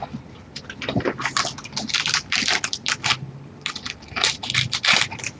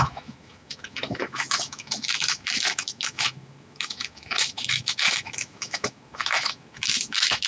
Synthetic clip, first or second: second